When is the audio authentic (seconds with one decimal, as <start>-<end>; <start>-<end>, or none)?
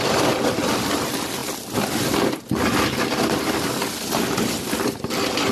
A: 1.4-4.7